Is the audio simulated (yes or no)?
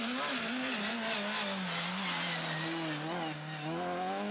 no